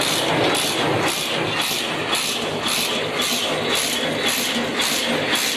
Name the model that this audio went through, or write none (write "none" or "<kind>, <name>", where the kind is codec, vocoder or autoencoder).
none